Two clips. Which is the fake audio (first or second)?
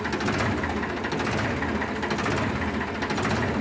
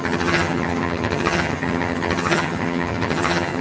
second